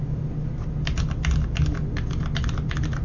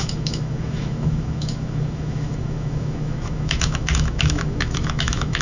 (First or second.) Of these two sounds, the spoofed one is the second